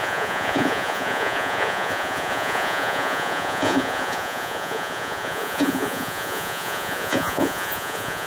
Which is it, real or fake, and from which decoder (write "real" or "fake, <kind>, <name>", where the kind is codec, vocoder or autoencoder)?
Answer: fake, vocoder, Vocos